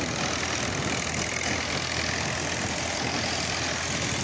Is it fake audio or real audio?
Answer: real